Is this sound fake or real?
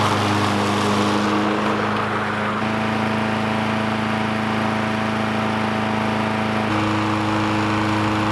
real